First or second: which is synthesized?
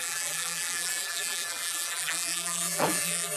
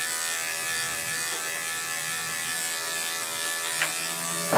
first